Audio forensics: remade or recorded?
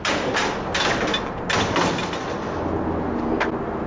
recorded